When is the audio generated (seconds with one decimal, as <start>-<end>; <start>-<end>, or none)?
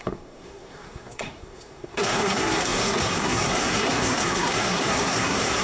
0.0-5.6